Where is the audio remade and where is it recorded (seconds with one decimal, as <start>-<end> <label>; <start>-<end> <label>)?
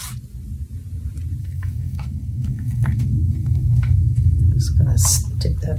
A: 0.0-1.4 recorded; 1.4-4.4 remade; 4.4-5.8 recorded